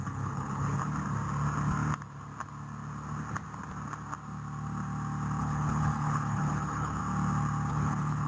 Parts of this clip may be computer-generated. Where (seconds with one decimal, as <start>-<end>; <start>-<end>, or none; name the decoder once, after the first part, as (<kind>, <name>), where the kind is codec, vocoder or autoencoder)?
0.0-0.8 (codec, HILCodec); 5.4-7.0; 7.7-8.3